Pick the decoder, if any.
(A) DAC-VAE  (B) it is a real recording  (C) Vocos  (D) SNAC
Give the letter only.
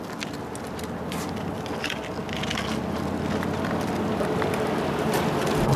B